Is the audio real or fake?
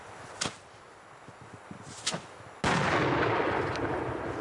real